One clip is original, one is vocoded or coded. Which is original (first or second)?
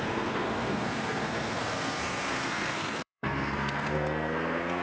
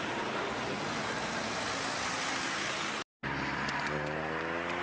second